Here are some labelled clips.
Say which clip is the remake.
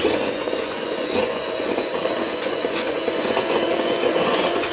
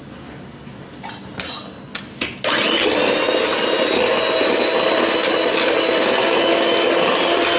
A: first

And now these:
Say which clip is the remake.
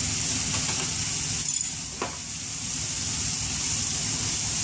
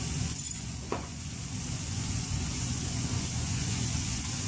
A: second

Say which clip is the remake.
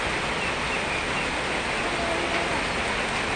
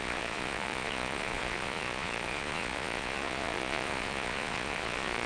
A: second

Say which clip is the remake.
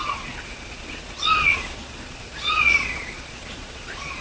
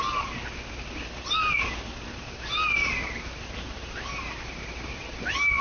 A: first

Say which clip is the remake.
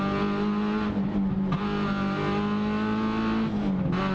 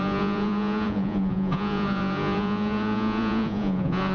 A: second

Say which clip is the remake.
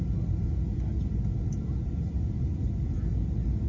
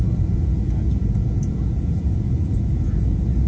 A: second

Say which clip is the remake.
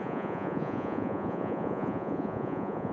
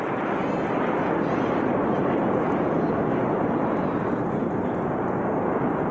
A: first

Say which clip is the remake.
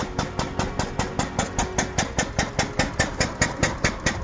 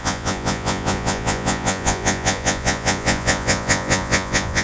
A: second